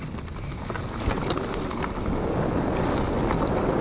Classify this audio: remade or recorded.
recorded